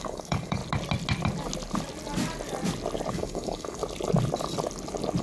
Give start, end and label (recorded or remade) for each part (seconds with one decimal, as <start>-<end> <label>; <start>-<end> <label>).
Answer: 0.0-0.6 remade; 0.6-3.1 recorded; 3.1-3.8 remade; 3.8-5.2 recorded